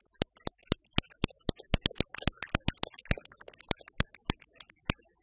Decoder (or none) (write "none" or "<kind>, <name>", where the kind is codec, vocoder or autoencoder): none